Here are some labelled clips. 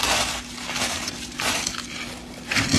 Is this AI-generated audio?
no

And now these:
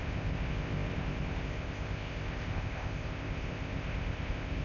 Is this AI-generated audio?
yes